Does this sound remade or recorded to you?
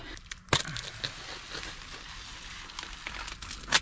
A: recorded